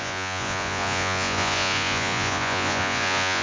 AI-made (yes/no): yes